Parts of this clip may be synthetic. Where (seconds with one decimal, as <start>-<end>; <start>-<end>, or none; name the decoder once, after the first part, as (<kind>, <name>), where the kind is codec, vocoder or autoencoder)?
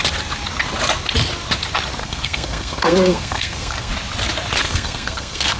2.0-3.9 (codec, SNAC); 4.6-5.6